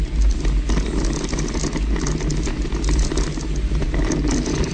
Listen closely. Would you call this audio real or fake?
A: real